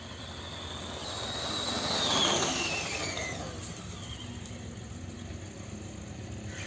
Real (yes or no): yes